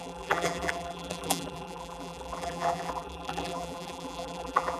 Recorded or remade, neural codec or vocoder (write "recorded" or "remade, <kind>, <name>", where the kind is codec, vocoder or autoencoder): remade, vocoder, BigVGAN v2